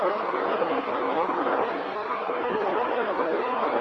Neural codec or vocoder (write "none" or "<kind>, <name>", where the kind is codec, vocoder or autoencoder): codec, SNAC